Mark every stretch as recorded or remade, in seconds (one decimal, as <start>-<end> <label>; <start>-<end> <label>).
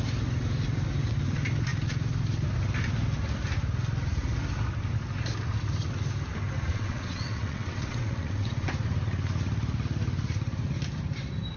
0.0-6.7 recorded; 6.7-8.7 remade; 8.7-11.6 recorded